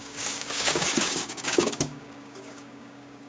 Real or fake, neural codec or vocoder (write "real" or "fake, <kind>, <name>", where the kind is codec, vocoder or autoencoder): fake, codec, DAC